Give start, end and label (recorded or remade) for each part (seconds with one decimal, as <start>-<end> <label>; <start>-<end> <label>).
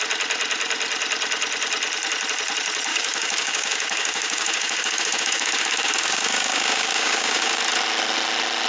0.0-2.9 recorded; 2.9-7.6 remade; 7.6-8.7 recorded